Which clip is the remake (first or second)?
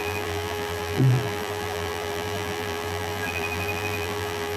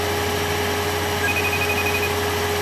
first